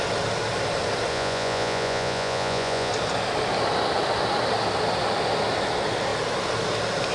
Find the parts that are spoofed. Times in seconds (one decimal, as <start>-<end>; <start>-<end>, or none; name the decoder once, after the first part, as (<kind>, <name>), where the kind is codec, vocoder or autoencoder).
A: 1.1-2.9 (vocoder, Vocos)